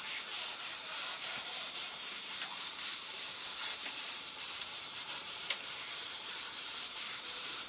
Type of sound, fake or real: fake